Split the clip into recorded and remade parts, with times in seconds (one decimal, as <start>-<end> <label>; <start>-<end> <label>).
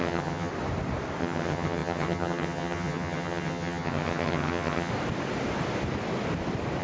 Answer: 0.0-0.5 remade; 0.5-1.2 recorded; 1.2-4.9 remade; 4.9-6.8 recorded